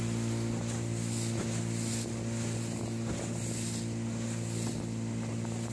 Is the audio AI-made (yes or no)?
no